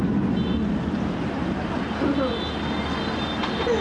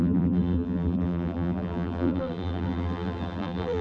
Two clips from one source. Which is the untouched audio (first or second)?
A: first